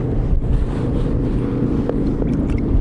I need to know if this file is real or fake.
real